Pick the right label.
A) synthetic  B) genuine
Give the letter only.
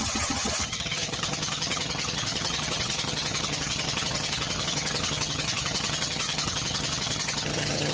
A